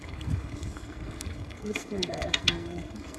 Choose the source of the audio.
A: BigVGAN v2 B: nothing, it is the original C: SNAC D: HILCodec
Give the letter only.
C